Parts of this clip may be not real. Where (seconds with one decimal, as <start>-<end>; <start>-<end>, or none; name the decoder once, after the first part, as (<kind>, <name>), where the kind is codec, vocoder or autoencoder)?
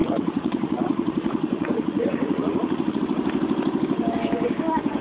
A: 0.0-3.0 (vocoder, Vocos)